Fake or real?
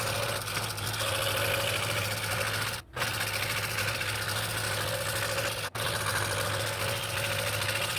real